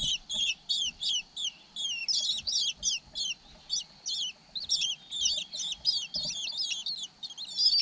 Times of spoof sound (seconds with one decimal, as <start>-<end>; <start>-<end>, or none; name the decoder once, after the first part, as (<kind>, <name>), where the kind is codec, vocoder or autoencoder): none